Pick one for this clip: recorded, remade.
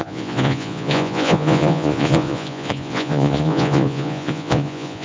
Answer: remade